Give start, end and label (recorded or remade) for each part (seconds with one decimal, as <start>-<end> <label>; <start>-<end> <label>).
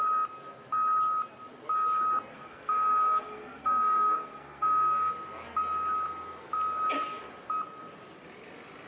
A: 0.0-2.3 recorded; 2.3-5.1 remade; 5.1-8.9 recorded